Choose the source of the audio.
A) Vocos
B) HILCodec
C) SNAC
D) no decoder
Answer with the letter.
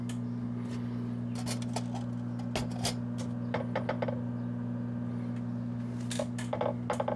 D